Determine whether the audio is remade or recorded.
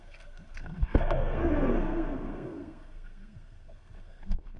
remade